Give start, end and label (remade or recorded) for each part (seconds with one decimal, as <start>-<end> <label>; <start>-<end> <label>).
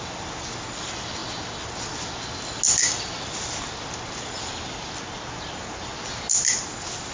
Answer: 0.0-7.1 recorded